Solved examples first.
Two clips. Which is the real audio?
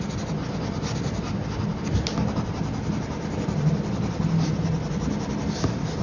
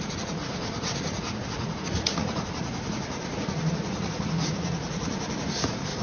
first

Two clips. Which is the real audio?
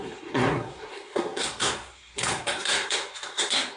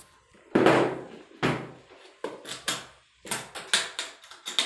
second